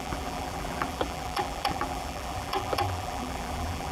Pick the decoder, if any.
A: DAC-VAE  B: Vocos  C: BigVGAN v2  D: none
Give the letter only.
C